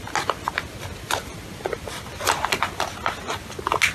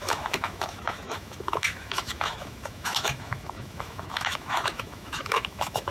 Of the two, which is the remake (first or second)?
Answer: second